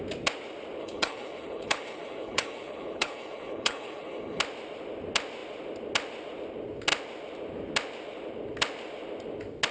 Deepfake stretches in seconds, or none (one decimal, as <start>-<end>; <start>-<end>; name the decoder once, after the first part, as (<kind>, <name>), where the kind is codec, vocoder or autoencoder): 0.8-4.4 (codec, HILCodec)